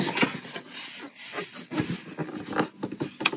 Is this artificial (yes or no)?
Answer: no